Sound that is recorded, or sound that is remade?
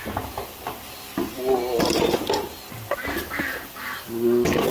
recorded